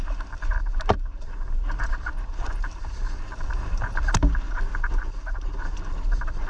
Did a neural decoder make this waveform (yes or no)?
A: no